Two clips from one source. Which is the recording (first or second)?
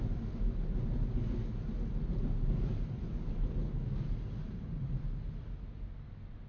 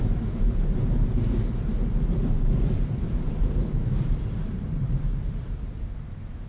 first